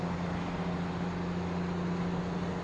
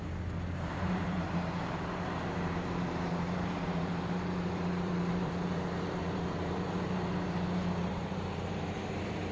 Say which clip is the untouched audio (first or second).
first